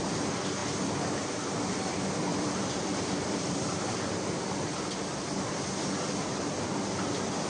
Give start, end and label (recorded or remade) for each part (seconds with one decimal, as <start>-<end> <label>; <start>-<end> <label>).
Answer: 0.0-2.3 recorded; 2.3-3.9 remade; 3.9-7.5 recorded